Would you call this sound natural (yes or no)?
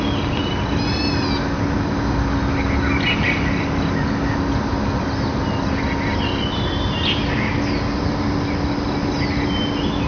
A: yes